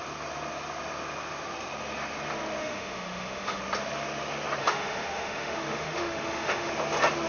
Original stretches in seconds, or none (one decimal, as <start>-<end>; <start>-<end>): 0.0-2.6; 3.6-4.6; 6.7-7.3